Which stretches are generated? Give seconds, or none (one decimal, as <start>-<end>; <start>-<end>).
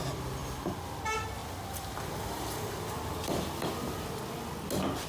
1.4-3.7